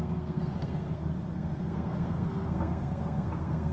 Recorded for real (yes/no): no